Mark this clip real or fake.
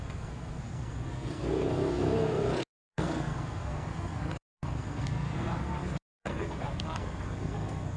fake